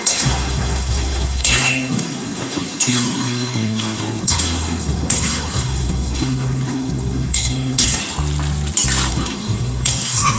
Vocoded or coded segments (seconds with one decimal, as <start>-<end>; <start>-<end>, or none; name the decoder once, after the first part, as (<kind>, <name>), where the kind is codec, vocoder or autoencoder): 0.0-8.0 (codec, SNAC); 9.1-10.4